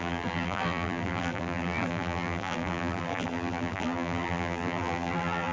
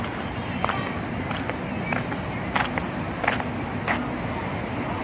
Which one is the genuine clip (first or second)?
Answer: second